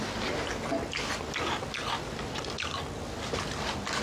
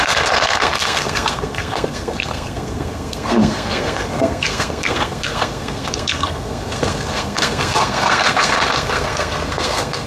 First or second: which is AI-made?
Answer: second